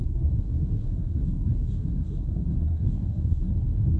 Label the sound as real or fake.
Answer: fake